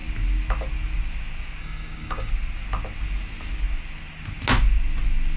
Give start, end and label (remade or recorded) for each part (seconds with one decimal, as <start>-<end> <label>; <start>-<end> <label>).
0.0-1.6 recorded; 1.6-2.3 remade; 2.3-5.4 recorded